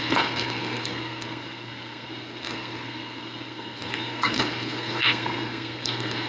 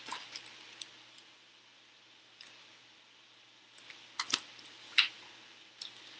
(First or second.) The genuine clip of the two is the second